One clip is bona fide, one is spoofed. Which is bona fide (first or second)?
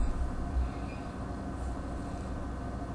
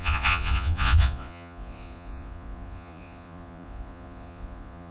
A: first